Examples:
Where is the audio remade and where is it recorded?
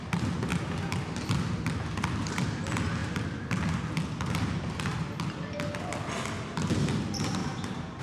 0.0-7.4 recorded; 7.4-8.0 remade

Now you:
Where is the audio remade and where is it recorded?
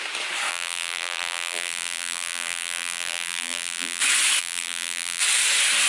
0.0-0.5 recorded; 0.5-4.0 remade; 4.0-4.4 recorded; 4.4-5.2 remade; 5.2-5.9 recorded